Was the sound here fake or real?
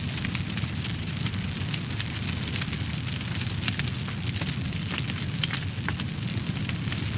real